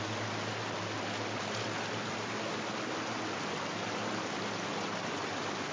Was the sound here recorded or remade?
recorded